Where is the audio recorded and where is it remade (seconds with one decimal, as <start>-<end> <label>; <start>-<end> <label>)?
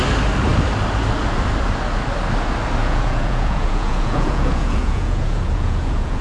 0.0-2.8 recorded; 2.8-6.2 remade